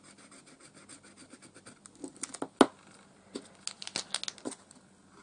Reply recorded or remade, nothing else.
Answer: recorded